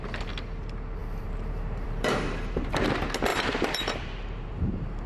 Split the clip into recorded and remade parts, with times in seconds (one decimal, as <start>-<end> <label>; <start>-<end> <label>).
0.0-1.0 recorded; 1.0-2.7 remade; 2.7-3.3 recorded; 3.3-5.1 remade